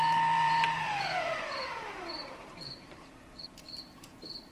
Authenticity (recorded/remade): remade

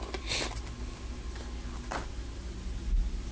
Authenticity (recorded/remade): recorded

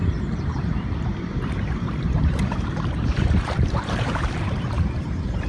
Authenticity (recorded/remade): remade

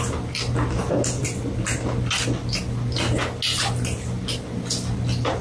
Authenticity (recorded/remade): recorded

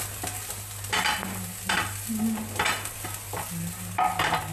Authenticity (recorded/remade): recorded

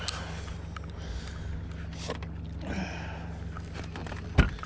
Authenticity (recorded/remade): recorded